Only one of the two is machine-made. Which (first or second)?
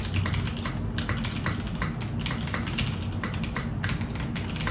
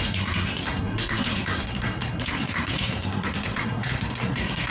second